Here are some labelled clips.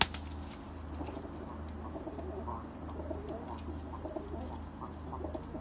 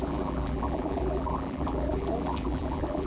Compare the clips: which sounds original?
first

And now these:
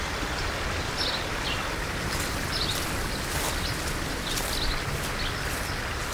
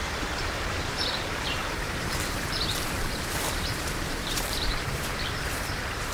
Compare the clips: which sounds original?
first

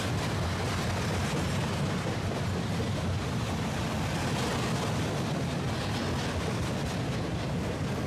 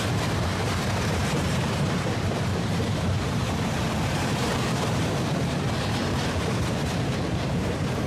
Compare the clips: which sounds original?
first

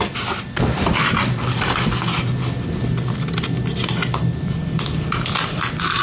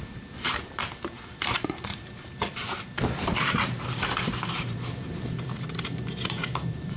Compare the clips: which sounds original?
first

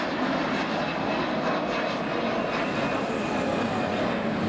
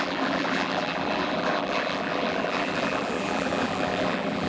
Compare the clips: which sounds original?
first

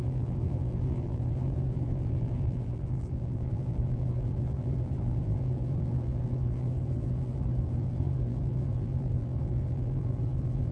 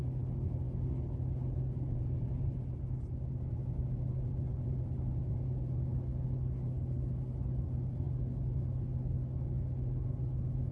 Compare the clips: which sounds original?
second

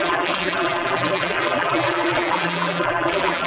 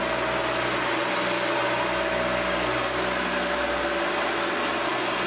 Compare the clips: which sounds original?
second